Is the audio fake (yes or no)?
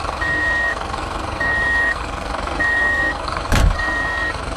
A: yes